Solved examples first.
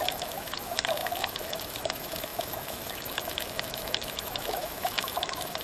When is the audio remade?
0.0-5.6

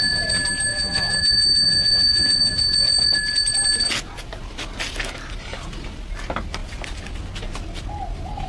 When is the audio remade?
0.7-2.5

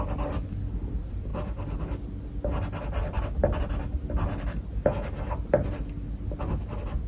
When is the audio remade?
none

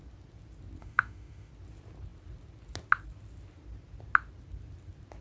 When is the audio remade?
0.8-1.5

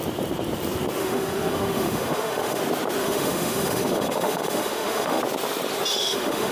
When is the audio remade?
1.0-2.6; 3.0-5.2; 5.9-6.5

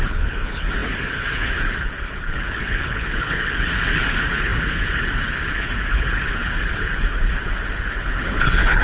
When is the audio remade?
0.0-8.8